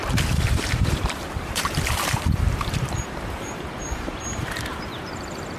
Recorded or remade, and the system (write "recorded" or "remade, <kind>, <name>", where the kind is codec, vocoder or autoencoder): remade, vocoder, BigVGAN v2